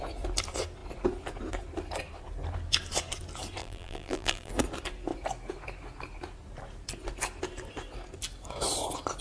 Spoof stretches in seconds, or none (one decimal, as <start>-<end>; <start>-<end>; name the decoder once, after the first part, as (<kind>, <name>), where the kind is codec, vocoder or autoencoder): 3.6-4.5 (vocoder, BigVGAN v2)